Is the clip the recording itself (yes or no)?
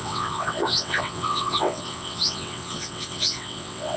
no